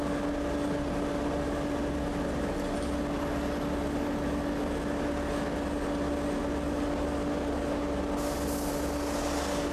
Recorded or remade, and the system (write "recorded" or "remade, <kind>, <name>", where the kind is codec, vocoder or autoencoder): recorded